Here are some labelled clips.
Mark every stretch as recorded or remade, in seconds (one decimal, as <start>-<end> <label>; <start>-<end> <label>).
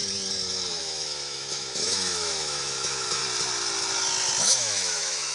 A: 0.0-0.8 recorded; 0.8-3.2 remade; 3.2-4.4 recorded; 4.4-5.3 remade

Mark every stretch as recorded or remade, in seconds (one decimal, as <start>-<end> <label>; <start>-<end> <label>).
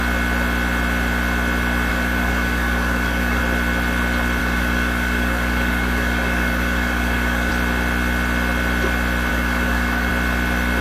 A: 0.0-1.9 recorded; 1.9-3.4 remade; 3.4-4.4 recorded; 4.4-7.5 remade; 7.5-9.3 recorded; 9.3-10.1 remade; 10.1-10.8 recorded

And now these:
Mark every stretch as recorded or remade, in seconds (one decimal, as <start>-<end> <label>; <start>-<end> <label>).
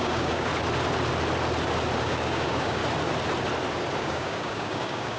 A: 0.0-0.5 remade; 0.5-2.0 recorded; 2.0-2.8 remade; 2.8-4.0 recorded; 4.0-5.2 remade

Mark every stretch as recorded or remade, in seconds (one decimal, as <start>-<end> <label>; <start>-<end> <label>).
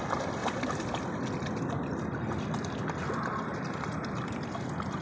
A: 0.0-5.0 remade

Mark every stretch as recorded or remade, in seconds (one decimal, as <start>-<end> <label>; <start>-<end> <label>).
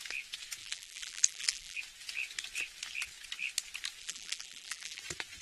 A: 0.0-0.6 recorded; 0.6-1.8 remade; 1.8-4.0 recorded; 4.0-5.0 remade; 5.0-5.4 recorded